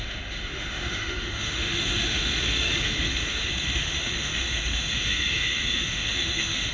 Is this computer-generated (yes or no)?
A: yes